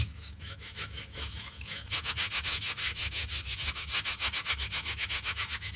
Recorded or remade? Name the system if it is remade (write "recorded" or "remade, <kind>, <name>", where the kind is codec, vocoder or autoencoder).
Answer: remade, autoencoder, DAC-VAE